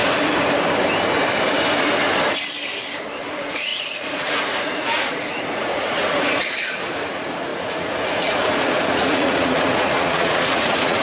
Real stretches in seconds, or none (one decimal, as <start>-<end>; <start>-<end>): 0.0-3.2